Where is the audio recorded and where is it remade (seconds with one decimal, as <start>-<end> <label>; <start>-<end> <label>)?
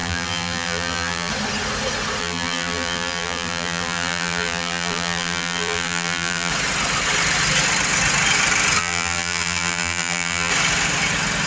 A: 0.0-1.3 remade; 1.3-2.2 recorded; 2.2-6.5 remade; 6.5-8.8 recorded; 8.8-10.5 remade; 10.5-11.5 recorded